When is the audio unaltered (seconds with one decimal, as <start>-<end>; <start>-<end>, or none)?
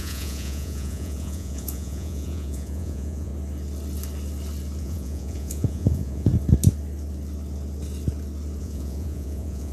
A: 3.3-4.8; 6.3-8.6